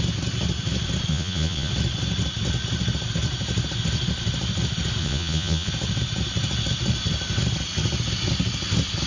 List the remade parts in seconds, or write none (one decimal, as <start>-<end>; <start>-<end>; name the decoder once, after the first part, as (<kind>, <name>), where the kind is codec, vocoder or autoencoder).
1.1-1.7 (vocoder, Vocos); 5.0-5.7